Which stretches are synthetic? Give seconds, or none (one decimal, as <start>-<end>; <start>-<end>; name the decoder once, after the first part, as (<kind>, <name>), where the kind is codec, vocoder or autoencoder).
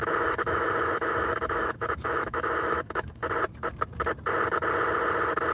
0.0-3.3 (autoencoder, DAC-VAE)